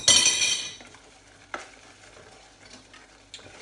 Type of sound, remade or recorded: recorded